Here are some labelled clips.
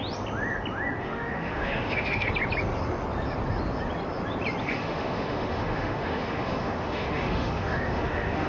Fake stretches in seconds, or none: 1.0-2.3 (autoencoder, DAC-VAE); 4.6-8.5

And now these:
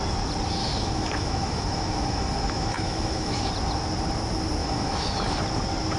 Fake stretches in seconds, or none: 0.6-3.5 (autoencoder, DAC-VAE); 4.6-5.4

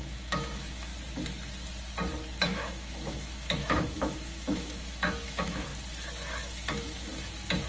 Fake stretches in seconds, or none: 0.0-0.9 (autoencoder, DAC-VAE); 2.4-5.7; 6.4-7.1

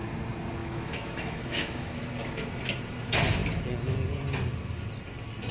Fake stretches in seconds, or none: 0.6-2.1 (autoencoder, DAC-VAE)